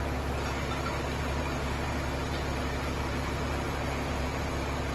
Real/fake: fake